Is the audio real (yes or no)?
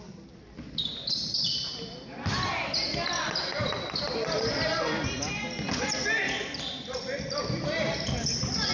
yes